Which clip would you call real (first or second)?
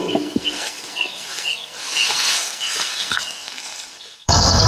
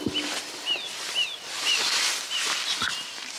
second